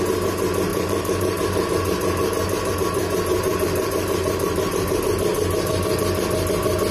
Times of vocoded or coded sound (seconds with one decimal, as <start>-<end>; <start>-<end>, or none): 0.7-2.7; 3.3-5.0